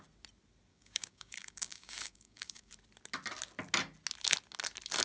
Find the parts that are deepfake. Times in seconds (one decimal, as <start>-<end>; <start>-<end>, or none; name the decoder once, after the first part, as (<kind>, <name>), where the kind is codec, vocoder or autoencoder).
0.7-2.7 (codec, DAC)